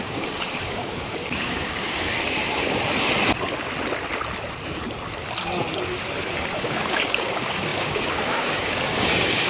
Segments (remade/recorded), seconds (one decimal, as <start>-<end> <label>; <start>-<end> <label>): 0.0-2.1 remade; 2.1-6.6 recorded; 6.6-9.5 remade